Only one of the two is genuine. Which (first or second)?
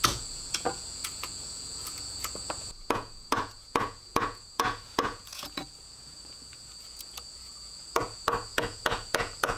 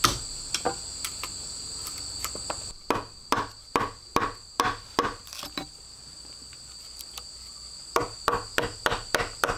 second